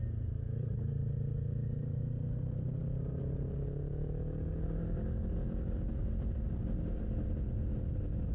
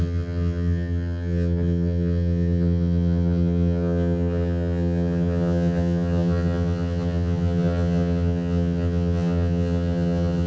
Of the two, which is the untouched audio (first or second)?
first